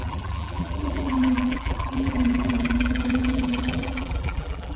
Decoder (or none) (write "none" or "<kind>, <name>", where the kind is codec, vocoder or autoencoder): vocoder, BigVGAN v2